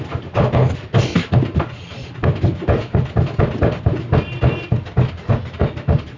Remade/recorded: recorded